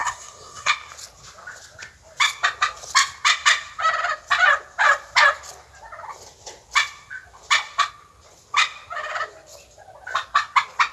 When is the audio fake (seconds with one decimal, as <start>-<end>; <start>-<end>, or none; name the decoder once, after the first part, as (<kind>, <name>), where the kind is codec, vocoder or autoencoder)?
0.0-0.7 (codec, SNAC)

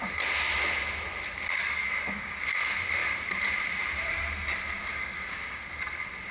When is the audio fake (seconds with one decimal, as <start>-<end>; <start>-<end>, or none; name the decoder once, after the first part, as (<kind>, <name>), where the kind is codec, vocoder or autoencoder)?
1.6-2.4 (codec, DAC); 4.9-5.6

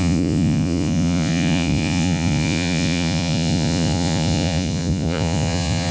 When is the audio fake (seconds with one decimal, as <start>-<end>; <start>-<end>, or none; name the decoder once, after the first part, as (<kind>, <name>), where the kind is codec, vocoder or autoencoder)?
0.0-5.9 (vocoder, Vocos)

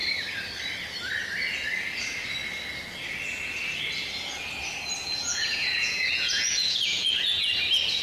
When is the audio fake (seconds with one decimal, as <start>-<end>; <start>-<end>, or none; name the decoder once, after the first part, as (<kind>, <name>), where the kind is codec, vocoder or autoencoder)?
5.0-7.5 (vocoder, Vocos)

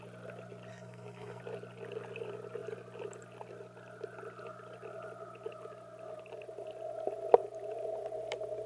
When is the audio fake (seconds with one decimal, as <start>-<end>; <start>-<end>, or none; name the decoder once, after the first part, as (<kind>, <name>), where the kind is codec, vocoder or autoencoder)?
0.7-1.4 (codec, SNAC)

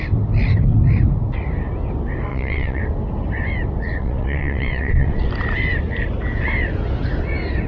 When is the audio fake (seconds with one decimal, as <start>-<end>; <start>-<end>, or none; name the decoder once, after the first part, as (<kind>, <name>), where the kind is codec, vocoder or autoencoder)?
2.3-2.8 (vocoder, WaveNeXt); 4.0-5.3

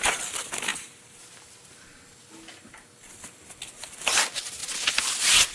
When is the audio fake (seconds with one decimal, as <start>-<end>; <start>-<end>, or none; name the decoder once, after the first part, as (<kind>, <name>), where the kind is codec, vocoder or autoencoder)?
0.7-2.0 (vocoder, BigVGAN v2); 4.6-5.1